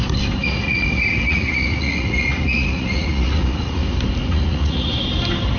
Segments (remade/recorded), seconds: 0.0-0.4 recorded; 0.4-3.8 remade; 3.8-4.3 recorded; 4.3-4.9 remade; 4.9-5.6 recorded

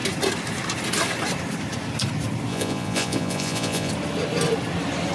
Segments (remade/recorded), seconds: 0.0-2.5 recorded; 2.5-3.9 remade; 3.9-5.1 recorded

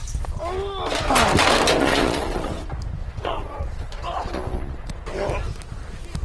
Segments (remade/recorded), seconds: 0.0-1.8 recorded; 1.8-2.5 remade; 2.5-3.0 recorded; 3.0-5.0 remade; 5.0-6.2 recorded